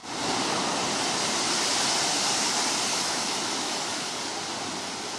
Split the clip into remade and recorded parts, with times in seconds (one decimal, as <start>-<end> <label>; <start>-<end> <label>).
0.0-2.9 recorded; 2.9-4.1 remade; 4.1-5.2 recorded